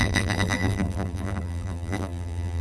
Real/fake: fake